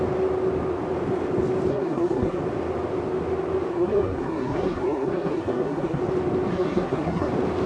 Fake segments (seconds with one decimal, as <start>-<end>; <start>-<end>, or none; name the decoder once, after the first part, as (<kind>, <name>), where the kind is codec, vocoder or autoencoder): 1.7-2.4 (codec, SNAC); 3.7-6.0; 6.5-7.3